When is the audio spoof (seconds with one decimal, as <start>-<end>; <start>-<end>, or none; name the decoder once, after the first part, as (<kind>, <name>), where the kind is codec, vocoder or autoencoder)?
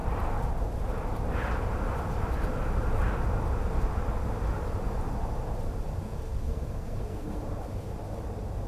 6.0-7.4 (codec, SNAC)